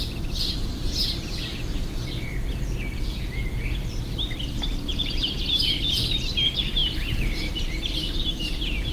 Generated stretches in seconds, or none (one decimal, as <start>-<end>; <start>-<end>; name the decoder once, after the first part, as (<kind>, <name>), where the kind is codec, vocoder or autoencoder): 4.9-5.8 (vocoder, BigVGAN v2); 6.8-8.9